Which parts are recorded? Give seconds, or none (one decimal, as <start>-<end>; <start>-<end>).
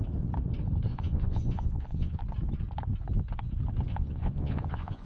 0.0-0.9; 2.2-3.9